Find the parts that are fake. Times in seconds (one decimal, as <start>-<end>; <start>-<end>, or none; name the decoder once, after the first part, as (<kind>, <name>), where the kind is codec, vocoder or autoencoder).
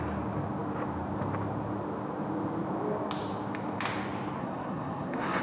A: 4.4-5.4 (codec, SNAC)